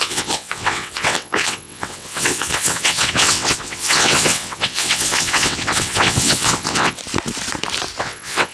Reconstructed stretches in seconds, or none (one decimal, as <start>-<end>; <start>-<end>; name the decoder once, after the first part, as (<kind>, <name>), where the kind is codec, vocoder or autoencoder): 0.0-7.0 (vocoder, WaveNeXt); 8.0-8.5